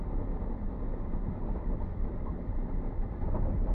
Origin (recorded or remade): remade